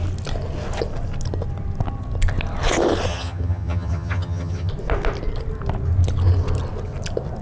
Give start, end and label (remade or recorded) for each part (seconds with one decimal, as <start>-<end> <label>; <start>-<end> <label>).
0.0-3.1 recorded; 3.1-4.7 remade; 4.7-7.4 recorded